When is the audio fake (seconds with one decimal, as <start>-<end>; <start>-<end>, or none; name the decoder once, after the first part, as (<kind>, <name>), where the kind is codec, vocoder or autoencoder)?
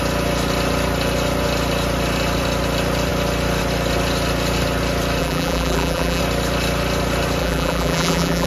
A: 5.2-6.2 (vocoder, BigVGAN v2); 7.4-8.5